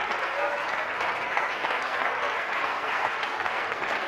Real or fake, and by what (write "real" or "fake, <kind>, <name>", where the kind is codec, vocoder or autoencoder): fake, codec, SNAC